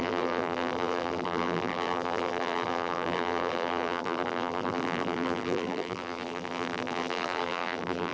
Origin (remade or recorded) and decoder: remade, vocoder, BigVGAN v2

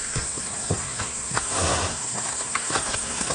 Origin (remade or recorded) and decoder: remade, codec, SNAC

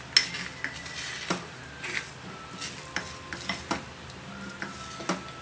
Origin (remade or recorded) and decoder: recorded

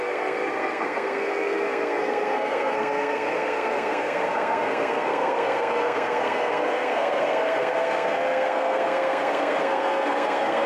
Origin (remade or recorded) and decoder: remade, codec, SNAC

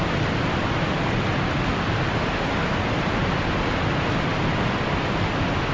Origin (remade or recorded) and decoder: recorded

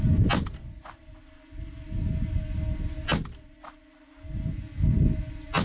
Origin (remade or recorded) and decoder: recorded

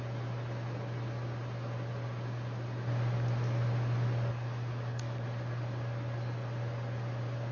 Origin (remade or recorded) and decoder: recorded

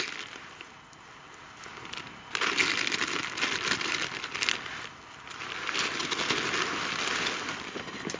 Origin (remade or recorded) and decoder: recorded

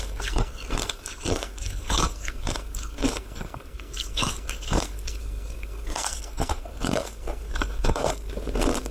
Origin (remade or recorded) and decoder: remade, codec, SNAC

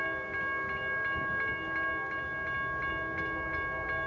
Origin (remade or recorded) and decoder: recorded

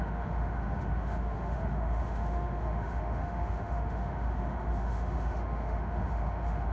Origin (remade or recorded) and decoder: remade, autoencoder, DAC-VAE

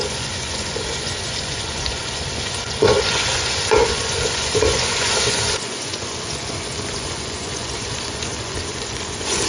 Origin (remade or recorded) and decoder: remade, vocoder, Vocos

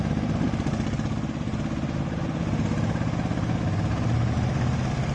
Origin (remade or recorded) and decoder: recorded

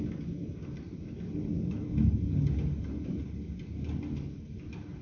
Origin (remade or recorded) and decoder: recorded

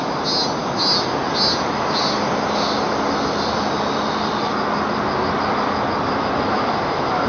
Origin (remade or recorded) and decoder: recorded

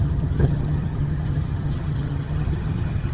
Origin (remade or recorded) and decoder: remade, vocoder, HiFi-GAN